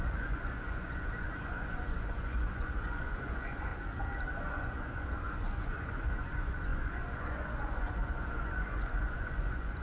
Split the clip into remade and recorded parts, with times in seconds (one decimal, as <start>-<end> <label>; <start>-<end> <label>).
0.0-3.7 remade; 3.7-4.4 recorded; 4.4-9.8 remade